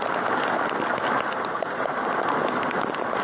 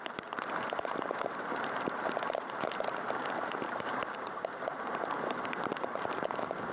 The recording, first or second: first